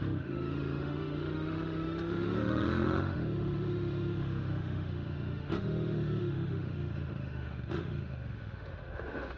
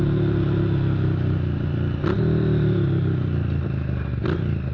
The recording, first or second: second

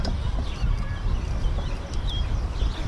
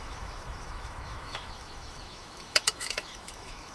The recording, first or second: first